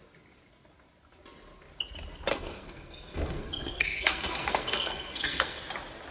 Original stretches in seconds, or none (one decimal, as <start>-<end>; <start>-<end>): 0.0-2.3; 5.6-6.1